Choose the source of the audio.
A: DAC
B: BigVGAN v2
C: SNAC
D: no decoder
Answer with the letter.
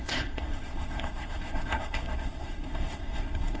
C